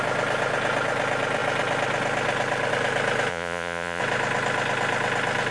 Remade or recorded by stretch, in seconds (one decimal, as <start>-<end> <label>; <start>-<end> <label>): 0.0-3.3 recorded; 3.3-4.0 remade; 4.0-5.5 recorded